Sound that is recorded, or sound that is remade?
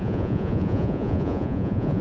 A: remade